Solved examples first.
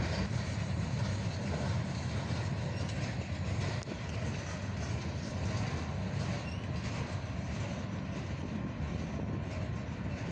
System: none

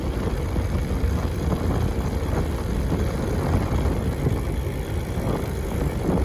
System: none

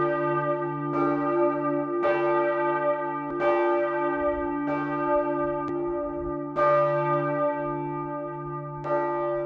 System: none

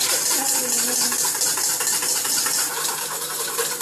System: none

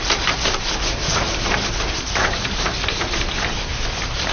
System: vocoder, BigVGAN v2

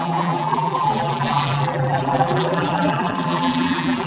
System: vocoder, BigVGAN v2